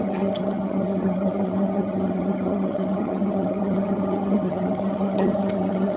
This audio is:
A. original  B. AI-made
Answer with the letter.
B